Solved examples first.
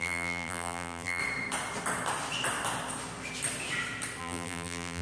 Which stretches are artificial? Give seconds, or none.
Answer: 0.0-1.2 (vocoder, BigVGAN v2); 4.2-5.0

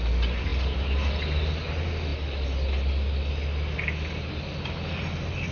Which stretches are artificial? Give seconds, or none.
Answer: none

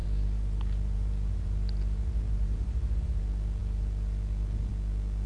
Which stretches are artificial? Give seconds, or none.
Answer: 0.0-3.2 (vocoder, BigVGAN v2)

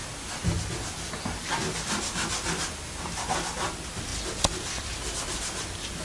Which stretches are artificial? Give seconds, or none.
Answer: 3.6-4.1 (vocoder, BigVGAN v2); 4.8-6.0